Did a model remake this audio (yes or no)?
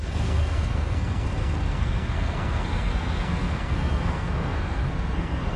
yes